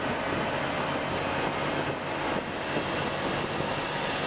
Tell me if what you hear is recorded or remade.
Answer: recorded